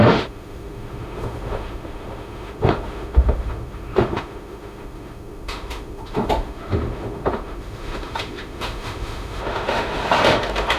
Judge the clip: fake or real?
fake